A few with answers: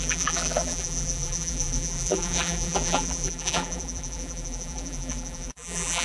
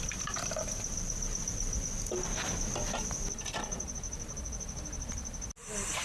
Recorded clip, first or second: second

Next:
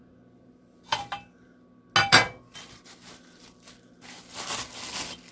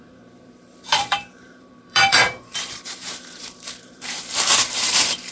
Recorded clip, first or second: first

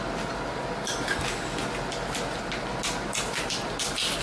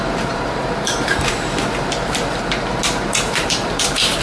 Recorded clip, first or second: first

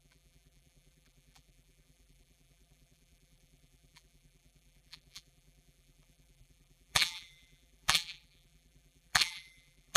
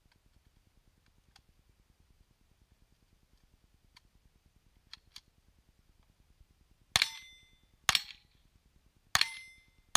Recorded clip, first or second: second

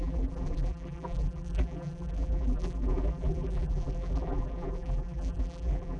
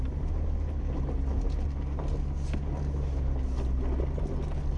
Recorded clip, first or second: second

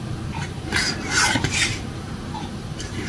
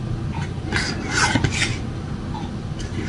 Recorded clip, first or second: second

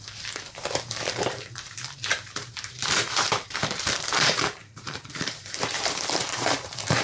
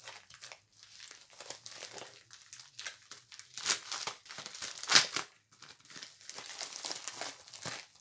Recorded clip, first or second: second